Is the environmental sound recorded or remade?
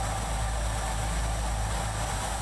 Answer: recorded